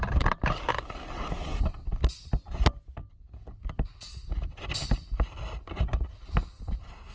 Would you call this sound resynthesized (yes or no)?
no